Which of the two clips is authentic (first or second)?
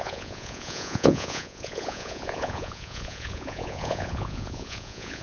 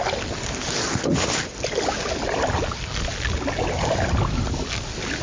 second